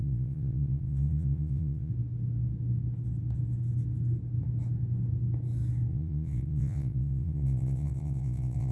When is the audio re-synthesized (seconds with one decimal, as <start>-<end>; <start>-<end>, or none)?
0.0-1.9; 5.9-8.7